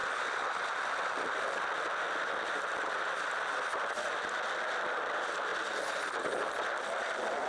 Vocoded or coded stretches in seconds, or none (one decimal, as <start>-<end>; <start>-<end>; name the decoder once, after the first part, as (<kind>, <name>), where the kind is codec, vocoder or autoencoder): 0.0-5.5 (vocoder, BigVGAN v2); 6.2-7.5